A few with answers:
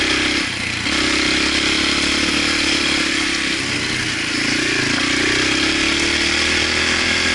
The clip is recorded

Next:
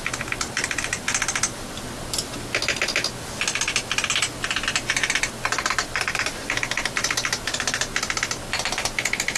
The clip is recorded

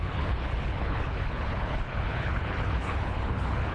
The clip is remade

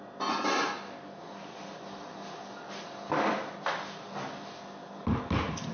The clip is recorded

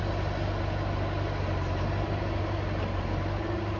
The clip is recorded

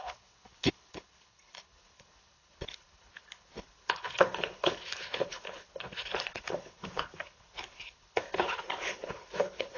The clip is remade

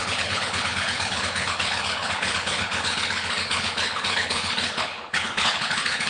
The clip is remade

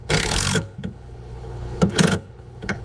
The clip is remade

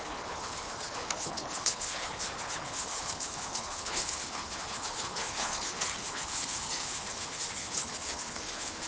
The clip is remade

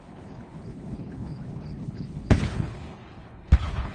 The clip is remade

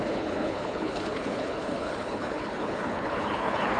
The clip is remade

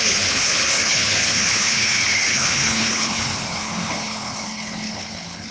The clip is remade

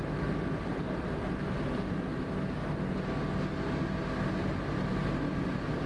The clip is recorded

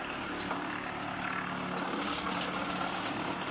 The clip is recorded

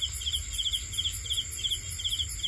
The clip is recorded